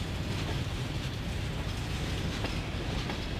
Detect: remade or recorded recorded